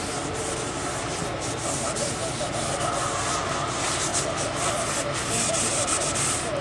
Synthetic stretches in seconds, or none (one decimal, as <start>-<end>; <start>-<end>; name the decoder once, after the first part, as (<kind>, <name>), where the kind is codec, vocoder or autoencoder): 0.0-1.2 (vocoder, BigVGAN v2); 3.5-4.1; 5.5-6.6